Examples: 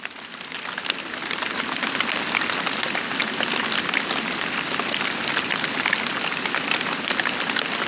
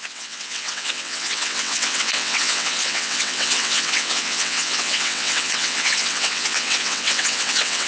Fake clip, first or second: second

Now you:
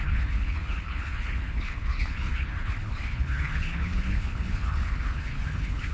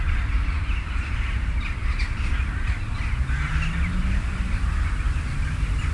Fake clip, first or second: first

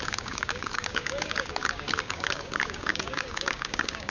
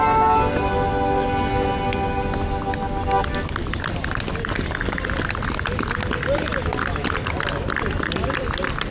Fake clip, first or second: first